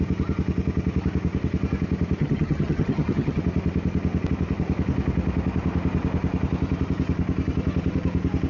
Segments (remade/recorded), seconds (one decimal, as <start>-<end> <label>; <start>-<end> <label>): 0.0-2.2 recorded; 2.2-3.4 remade; 3.4-8.5 recorded